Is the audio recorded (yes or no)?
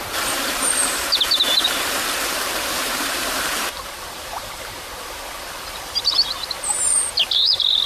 no